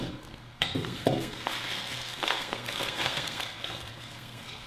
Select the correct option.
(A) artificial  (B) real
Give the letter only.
A